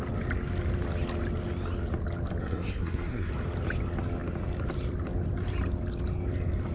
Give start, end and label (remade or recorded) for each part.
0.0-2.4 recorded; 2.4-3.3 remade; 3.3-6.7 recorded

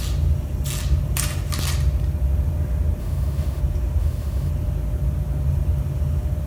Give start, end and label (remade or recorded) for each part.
0.0-3.0 recorded; 3.0-3.6 remade; 3.6-4.0 recorded; 4.0-4.5 remade; 4.5-6.5 recorded

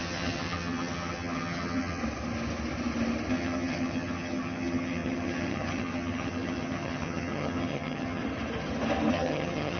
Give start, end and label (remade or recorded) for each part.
0.0-2.0 remade; 2.0-3.3 recorded; 3.3-8.2 remade; 8.2-9.1 recorded; 9.1-9.8 remade

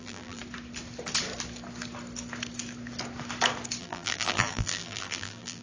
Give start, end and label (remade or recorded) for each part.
0.0-0.4 remade; 0.4-3.8 recorded; 3.8-5.6 remade